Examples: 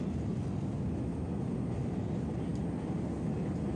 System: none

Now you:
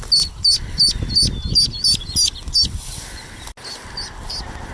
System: none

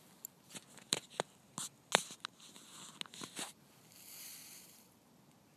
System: none